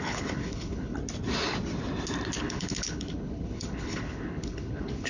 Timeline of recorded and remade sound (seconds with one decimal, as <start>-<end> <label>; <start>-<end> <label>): 0.0-1.0 remade; 1.0-2.4 recorded; 2.4-5.1 remade